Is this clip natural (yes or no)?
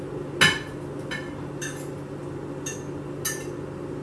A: yes